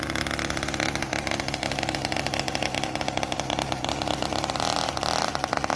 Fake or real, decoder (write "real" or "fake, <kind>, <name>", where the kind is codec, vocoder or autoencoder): real